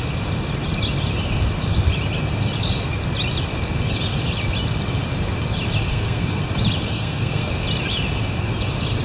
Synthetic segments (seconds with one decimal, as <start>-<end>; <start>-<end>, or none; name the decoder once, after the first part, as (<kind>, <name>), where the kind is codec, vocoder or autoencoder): 5.9-6.4 (codec, SNAC); 6.9-7.5